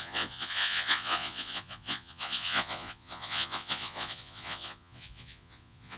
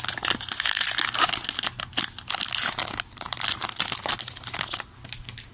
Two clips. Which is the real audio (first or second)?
second